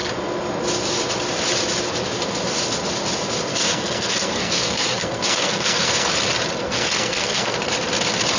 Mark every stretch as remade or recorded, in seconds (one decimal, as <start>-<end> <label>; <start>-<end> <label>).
0.0-3.5 recorded; 3.5-6.1 remade; 6.1-6.6 recorded; 6.6-7.6 remade; 7.6-8.4 recorded